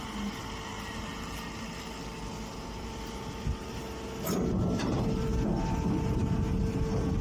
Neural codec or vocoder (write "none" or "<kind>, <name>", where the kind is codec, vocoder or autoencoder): none